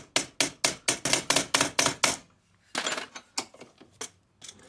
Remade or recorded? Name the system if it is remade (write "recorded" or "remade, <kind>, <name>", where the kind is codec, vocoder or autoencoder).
recorded